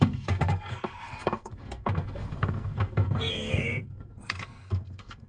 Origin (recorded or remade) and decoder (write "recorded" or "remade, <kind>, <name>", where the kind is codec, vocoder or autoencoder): remade, codec, SNAC